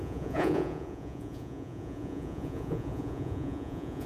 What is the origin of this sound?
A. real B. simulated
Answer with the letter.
B